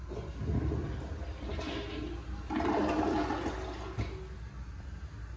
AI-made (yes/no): no